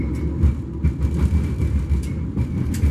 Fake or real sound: real